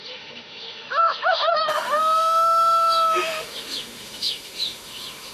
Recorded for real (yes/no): no